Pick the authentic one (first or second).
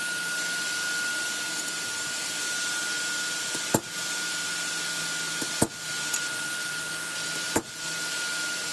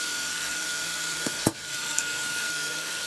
first